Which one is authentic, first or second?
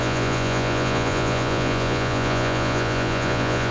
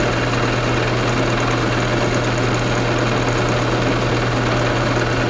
second